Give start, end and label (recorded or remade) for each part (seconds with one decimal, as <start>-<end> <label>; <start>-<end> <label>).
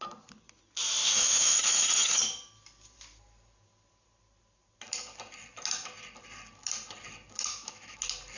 0.0-1.0 recorded; 1.0-2.2 remade; 2.2-7.5 recorded; 7.5-8.0 remade; 8.0-8.4 recorded